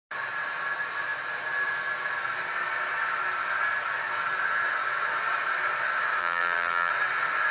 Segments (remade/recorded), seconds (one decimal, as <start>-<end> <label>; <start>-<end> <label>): 0.0-6.2 recorded; 6.2-6.9 remade; 6.9-7.5 recorded